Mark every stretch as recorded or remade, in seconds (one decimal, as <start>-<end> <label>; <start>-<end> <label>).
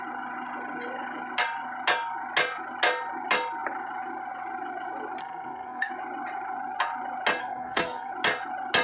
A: 0.0-5.2 recorded; 5.2-5.9 remade; 5.9-7.4 recorded; 7.4-8.1 remade; 8.1-8.8 recorded